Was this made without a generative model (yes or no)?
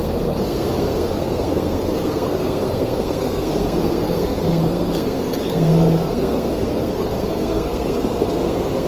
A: no